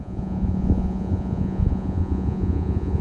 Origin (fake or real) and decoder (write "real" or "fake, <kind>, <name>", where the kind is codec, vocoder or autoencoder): fake, vocoder, Vocos